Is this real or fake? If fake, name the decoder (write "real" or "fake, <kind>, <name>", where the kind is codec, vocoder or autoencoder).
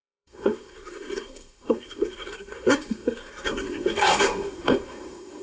fake, codec, SNAC